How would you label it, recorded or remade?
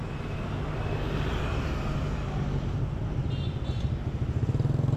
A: recorded